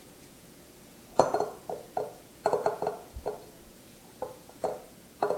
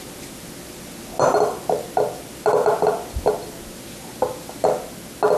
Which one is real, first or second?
second